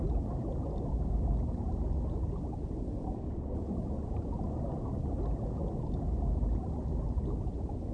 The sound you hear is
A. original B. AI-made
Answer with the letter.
A